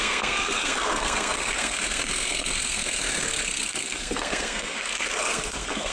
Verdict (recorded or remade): remade